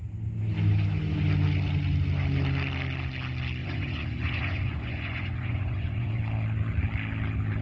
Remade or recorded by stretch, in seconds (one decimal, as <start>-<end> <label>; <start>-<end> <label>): 0.0-3.6 recorded; 3.6-6.2 remade; 6.2-7.6 recorded